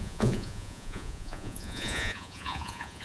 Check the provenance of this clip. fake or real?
fake